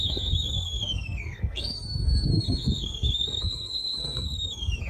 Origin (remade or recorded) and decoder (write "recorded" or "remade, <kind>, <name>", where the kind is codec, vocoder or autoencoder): remade, codec, SNAC